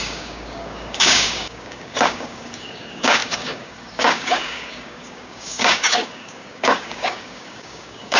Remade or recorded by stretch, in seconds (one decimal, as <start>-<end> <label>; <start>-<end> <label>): 0.0-8.2 remade